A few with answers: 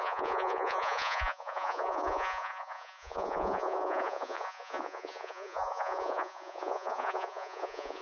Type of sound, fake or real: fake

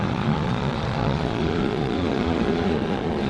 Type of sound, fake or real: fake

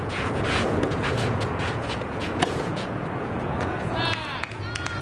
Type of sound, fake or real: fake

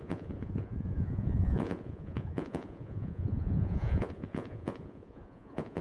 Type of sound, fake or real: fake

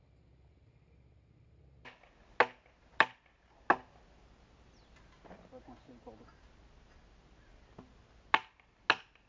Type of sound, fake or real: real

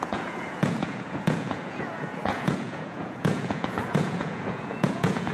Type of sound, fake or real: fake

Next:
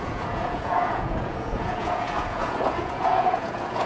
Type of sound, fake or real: fake